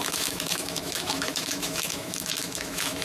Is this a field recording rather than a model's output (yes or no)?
no